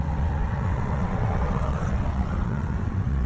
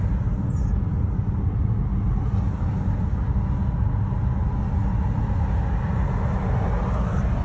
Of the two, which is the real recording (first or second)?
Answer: second